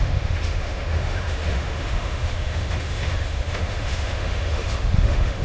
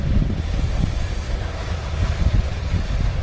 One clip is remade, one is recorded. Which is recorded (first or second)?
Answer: second